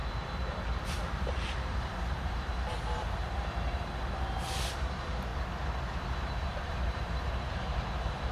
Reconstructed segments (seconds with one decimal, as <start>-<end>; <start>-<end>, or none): 0.0-5.3; 6.4-8.3